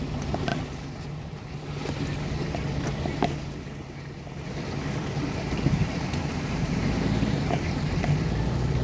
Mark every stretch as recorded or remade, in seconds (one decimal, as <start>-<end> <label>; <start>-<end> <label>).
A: 0.0-0.5 remade; 0.5-5.5 recorded; 5.5-8.8 remade

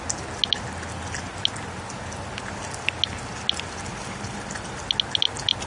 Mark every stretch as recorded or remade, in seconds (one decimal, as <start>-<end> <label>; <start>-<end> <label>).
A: 0.0-3.9 recorded; 3.9-4.8 remade; 4.8-5.7 recorded

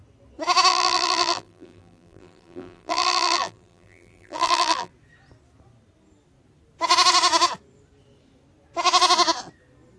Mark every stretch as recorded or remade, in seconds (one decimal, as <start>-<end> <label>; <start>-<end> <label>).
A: 0.0-0.7 recorded; 0.7-4.9 remade; 4.9-10.0 recorded

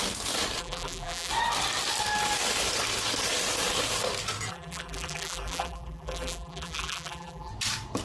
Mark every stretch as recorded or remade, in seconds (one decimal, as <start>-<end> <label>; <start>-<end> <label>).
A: 0.0-0.6 recorded; 0.6-1.3 remade; 1.3-4.5 recorded; 4.5-7.5 remade; 7.5-8.0 recorded

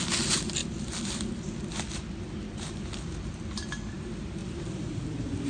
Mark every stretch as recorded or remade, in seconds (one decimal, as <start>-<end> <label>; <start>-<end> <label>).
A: 0.0-4.4 recorded; 4.4-5.5 remade

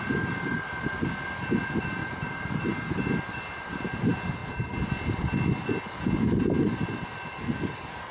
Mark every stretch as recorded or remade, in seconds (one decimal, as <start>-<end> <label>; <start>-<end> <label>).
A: 0.0-2.0 recorded; 2.0-3.0 remade; 3.0-8.1 recorded

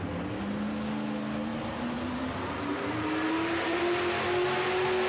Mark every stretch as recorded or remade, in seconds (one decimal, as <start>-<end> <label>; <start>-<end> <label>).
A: 0.0-1.5 recorded; 1.5-3.8 remade; 3.8-5.1 recorded

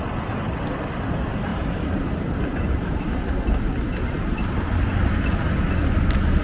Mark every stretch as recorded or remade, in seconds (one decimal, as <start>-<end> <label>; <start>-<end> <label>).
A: 0.0-1.5 recorded; 1.5-5.1 remade; 5.1-6.4 recorded